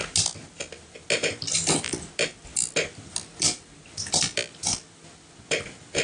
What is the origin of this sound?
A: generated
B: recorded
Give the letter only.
B